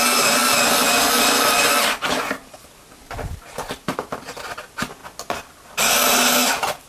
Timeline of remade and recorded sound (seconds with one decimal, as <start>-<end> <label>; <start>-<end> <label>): 0.0-6.9 recorded